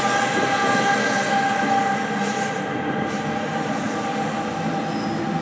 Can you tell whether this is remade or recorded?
recorded